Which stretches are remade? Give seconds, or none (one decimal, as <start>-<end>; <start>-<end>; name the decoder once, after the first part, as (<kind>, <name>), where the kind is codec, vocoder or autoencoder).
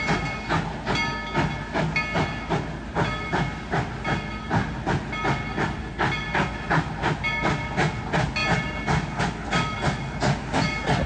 none